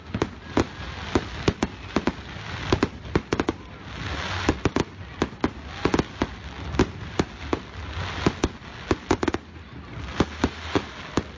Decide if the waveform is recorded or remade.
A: recorded